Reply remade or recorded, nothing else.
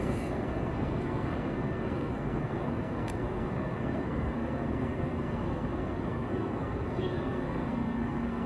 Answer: remade